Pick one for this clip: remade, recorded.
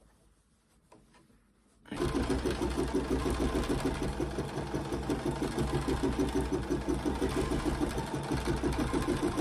recorded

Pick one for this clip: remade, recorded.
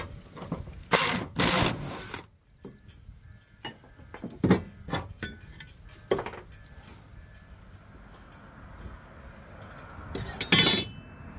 recorded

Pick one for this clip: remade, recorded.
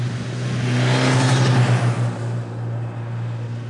recorded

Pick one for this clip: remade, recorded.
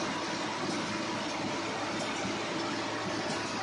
recorded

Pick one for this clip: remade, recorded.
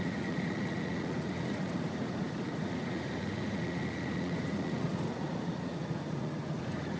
remade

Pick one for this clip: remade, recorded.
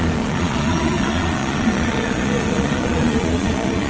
remade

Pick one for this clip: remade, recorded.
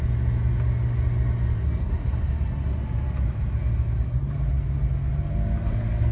recorded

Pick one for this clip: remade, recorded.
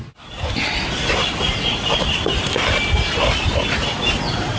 recorded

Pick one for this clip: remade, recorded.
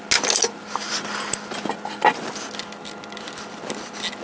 recorded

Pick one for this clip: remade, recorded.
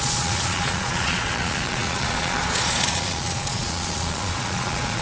remade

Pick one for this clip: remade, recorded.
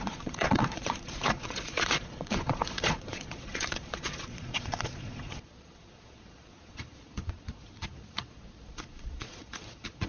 remade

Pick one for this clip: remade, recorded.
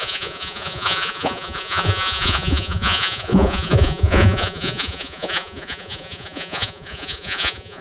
remade